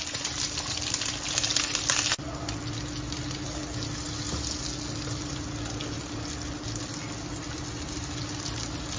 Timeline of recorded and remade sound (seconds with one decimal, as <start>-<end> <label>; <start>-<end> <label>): 0.0-9.0 recorded

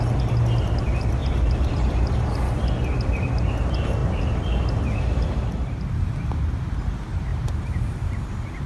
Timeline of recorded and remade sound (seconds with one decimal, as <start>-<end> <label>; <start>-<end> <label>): 0.0-1.2 recorded; 1.2-2.1 remade; 2.1-4.0 recorded; 4.0-6.0 remade; 6.0-7.3 recorded; 7.3-8.1 remade; 8.1-8.7 recorded

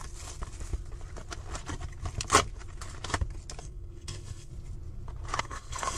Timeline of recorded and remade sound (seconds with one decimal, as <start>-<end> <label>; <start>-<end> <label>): 0.0-3.6 recorded; 3.6-4.5 remade; 4.5-5.4 recorded; 5.4-6.0 remade

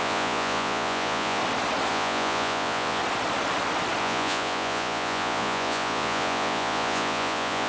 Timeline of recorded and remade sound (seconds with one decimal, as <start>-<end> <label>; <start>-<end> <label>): 0.0-1.4 remade; 1.4-1.9 recorded; 1.9-3.0 remade; 3.0-4.0 recorded; 4.0-7.7 remade

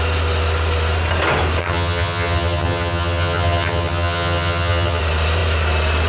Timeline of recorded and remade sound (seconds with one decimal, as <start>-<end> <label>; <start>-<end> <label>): 0.0-1.6 recorded; 1.6-5.0 remade; 5.0-6.1 recorded